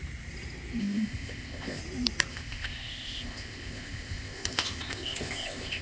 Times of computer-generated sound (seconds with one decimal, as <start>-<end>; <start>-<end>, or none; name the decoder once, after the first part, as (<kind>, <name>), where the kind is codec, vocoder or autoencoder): 0.8-1.8 (codec, ZipCodec); 2.3-5.8